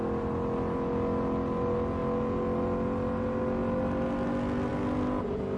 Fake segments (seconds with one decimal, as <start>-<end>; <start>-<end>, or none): none